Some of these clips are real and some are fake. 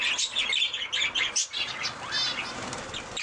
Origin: fake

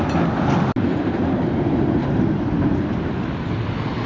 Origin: real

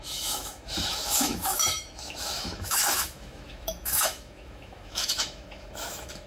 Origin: fake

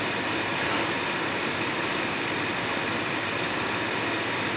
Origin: real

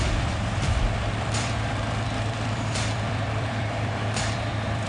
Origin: fake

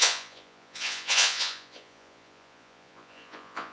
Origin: fake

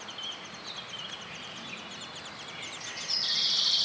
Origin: real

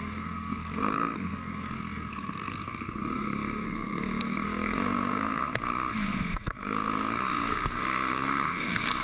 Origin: fake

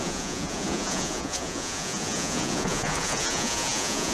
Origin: fake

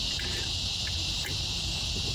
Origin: fake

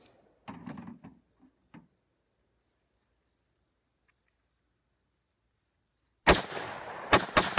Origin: real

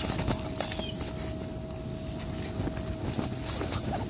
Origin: real